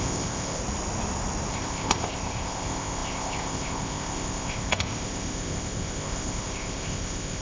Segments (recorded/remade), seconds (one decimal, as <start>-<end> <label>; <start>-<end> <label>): 0.0-0.6 remade; 0.6-1.5 recorded; 1.5-7.4 remade